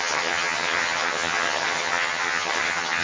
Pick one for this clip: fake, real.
fake